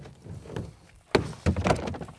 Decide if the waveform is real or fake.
real